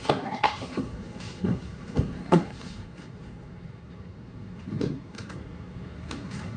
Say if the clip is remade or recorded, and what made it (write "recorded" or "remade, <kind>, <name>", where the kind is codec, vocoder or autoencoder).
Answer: remade, codec, SNAC